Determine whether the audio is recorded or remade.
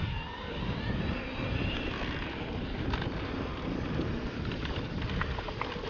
remade